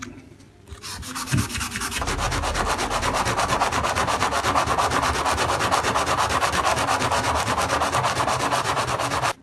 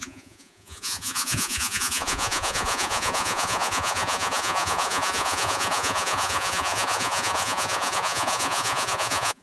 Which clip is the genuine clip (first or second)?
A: first